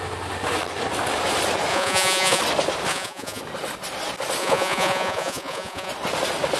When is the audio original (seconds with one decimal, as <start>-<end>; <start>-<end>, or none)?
0.0-1.7; 2.4-2.9; 3.4-4.4; 5.9-6.6